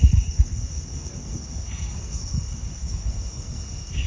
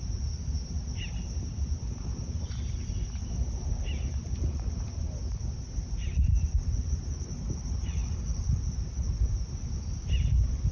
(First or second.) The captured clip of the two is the second